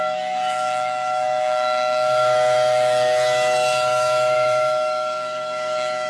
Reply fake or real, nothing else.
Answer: fake